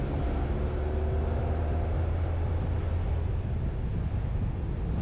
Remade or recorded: recorded